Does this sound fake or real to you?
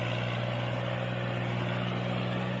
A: real